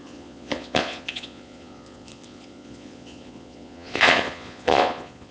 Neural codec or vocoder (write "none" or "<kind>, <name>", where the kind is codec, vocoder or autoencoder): vocoder, Vocos